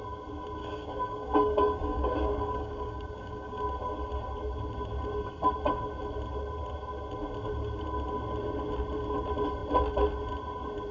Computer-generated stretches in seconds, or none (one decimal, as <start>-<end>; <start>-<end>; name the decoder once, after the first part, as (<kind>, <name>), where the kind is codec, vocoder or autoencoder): 0.6-3.6 (codec, DAC)

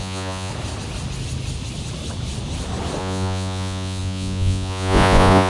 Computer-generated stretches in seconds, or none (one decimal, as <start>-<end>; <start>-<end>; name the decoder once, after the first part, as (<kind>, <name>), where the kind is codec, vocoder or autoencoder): 0.0-0.5 (vocoder, Vocos); 3.0-5.5